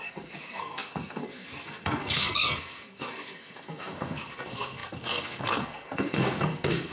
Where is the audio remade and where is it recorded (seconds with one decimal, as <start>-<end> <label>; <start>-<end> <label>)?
0.0-6.9 remade